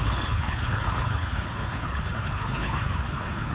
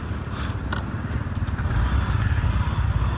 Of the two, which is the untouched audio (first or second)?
second